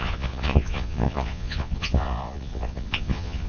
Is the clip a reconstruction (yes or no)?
yes